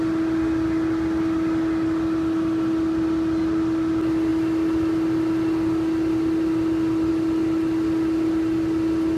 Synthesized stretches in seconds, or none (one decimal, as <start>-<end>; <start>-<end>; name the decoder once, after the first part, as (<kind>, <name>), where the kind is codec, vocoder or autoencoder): none